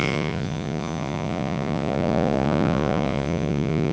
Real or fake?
fake